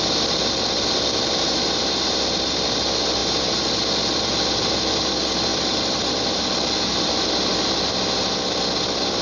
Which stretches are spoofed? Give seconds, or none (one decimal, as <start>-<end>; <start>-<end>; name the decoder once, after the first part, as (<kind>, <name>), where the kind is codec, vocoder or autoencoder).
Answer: none